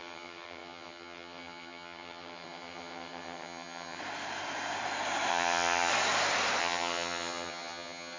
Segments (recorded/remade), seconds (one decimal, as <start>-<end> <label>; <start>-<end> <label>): 0.0-4.0 remade; 4.0-5.3 recorded; 5.3-5.9 remade; 5.9-6.6 recorded; 6.6-8.2 remade